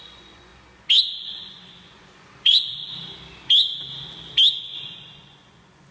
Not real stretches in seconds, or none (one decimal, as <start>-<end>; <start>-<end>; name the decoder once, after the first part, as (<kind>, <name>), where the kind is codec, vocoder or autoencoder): 0.0-0.5 (vocoder, Vocos); 1.1-2.8; 4.6-5.9